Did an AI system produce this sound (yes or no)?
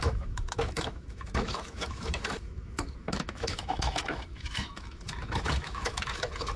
yes